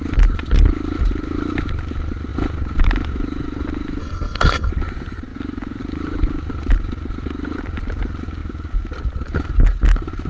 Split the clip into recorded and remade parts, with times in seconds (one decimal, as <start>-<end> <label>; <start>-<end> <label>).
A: 0.0-4.0 recorded; 4.0-4.7 remade; 4.7-10.3 recorded